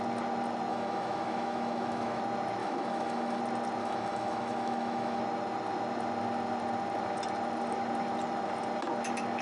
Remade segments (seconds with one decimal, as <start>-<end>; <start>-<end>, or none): 0.7-2.2; 2.6-3.4; 3.8-5.2